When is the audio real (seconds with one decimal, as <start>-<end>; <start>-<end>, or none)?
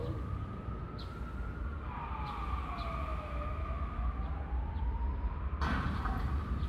0.0-3.1; 4.1-6.7